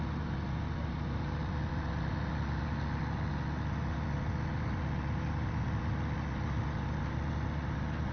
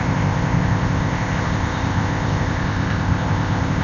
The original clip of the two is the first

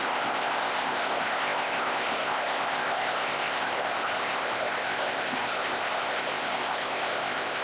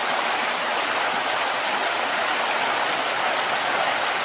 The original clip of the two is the second